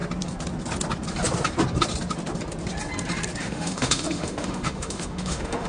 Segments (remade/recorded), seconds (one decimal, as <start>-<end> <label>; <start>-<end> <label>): 0.0-3.4 recorded; 3.4-5.7 remade